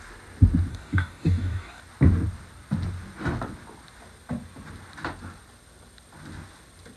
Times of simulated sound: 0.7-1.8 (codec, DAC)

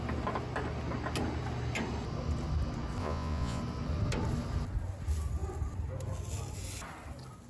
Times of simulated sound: 3.0-3.6 (vocoder, Vocos)